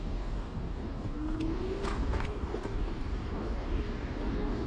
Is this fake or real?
fake